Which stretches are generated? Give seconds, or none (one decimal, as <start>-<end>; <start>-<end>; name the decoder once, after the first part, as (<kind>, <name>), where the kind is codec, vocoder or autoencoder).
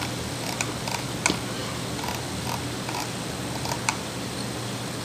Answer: none